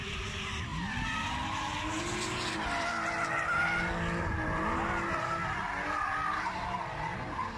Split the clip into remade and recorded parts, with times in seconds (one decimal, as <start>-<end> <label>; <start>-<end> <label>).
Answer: 0.0-7.6 recorded